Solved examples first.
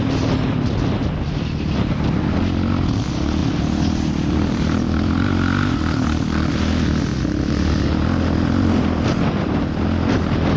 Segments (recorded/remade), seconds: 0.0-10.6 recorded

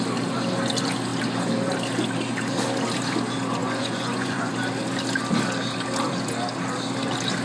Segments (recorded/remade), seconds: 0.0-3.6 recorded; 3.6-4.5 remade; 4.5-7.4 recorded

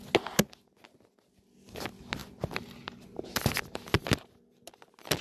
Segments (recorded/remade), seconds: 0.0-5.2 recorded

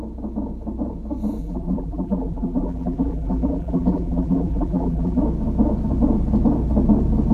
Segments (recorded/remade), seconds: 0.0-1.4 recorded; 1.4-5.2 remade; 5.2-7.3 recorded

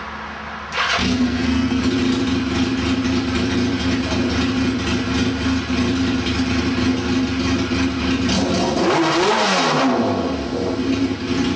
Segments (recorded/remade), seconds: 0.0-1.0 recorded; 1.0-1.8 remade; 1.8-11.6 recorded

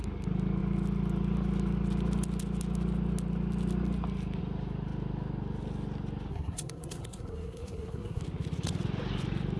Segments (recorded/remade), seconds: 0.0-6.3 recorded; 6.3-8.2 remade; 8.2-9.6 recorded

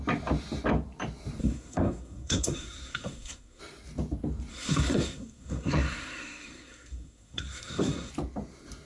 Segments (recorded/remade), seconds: 0.0-1.4 recorded; 1.4-3.6 remade; 3.6-4.5 recorded; 4.5-8.1 remade; 8.1-8.9 recorded